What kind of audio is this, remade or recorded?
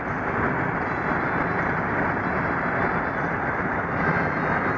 recorded